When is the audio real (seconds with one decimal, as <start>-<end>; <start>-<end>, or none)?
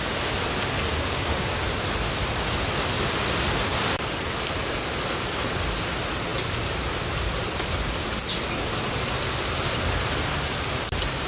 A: 0.0-0.9; 1.6-11.3